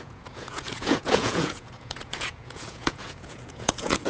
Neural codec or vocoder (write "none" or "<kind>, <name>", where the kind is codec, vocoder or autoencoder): vocoder, Vocos